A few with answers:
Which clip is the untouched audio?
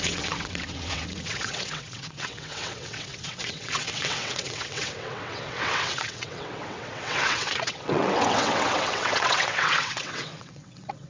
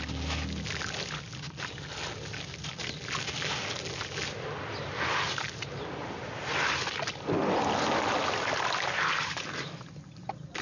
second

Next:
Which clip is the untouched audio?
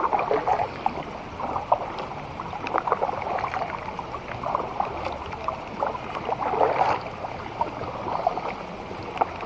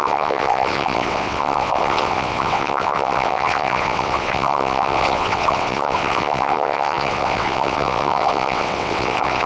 first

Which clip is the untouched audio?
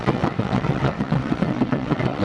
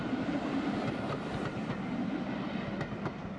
second